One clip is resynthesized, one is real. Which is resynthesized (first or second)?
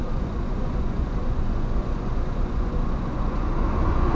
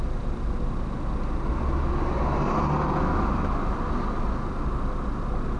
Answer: first